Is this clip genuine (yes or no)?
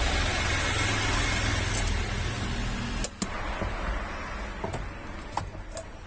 yes